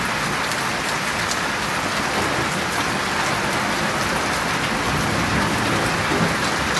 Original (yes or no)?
yes